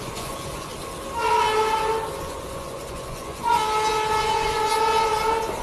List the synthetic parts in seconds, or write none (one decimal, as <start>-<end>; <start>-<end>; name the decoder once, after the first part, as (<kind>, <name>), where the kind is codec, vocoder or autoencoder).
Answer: 0.0-0.7 (vocoder, Vocos); 2.2-3.6; 4.2-4.7